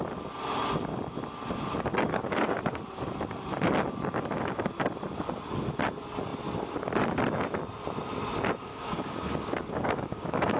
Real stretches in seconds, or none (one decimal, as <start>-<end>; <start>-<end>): 0.0-2.1; 2.8-8.7